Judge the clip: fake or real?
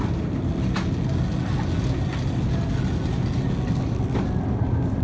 real